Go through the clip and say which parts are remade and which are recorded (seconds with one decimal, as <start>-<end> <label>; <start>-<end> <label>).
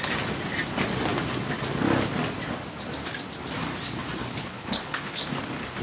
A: 0.0-4.2 recorded; 4.2-5.2 remade; 5.2-5.8 recorded